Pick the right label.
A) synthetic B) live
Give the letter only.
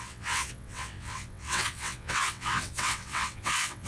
A